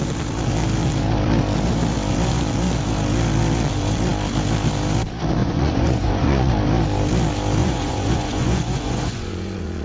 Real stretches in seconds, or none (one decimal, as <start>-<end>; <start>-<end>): 0.0-5.4; 6.5-7.6